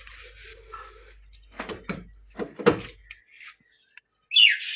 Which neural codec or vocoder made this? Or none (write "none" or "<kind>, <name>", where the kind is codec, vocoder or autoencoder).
none